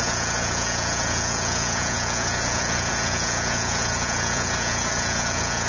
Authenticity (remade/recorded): remade